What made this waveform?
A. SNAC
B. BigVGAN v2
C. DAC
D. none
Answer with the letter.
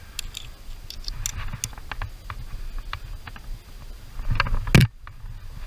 D